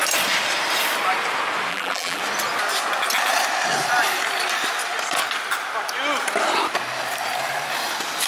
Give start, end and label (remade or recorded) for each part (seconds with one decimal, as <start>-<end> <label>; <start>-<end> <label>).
0.0-1.7 recorded; 1.7-2.2 remade; 2.2-8.3 recorded

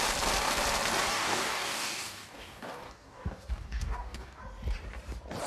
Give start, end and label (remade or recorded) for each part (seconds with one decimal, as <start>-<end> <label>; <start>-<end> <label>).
0.0-1.1 recorded; 1.1-4.4 remade; 4.4-5.5 recorded

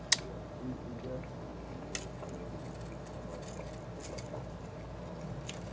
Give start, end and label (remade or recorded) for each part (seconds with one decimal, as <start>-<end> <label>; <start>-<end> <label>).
0.0-1.5 remade; 1.5-3.5 recorded; 3.5-5.7 remade

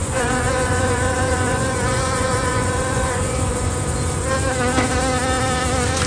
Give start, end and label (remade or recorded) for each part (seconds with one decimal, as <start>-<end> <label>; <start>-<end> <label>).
0.0-3.7 remade; 3.7-6.1 recorded

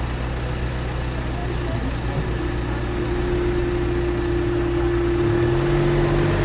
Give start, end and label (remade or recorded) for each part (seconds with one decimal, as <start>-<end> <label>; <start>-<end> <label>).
0.0-6.4 recorded

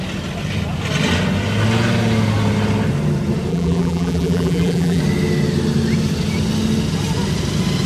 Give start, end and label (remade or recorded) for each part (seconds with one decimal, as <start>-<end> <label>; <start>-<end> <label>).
0.0-3.5 recorded; 3.5-5.0 remade; 5.0-7.9 recorded